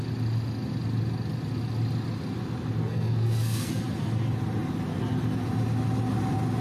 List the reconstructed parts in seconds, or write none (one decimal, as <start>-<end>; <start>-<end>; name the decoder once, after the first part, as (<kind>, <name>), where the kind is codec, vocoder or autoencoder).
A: 2.8-3.8 (codec, SNAC)

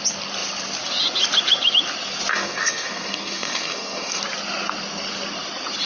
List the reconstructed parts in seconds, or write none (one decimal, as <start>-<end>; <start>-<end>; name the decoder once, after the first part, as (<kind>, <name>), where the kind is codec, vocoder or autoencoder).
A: 2.3-4.2 (codec, SNAC)

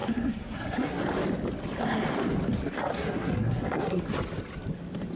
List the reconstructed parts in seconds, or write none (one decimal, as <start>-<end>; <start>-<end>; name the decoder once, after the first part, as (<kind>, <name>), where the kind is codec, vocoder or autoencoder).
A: 0.0-1.0 (codec, SNAC); 2.9-4.0